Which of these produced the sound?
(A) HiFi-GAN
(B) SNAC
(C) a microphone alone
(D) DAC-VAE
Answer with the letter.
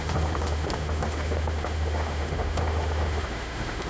D